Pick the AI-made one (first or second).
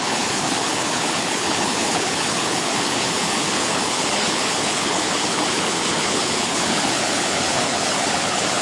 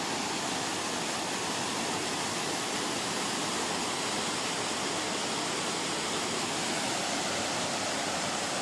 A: first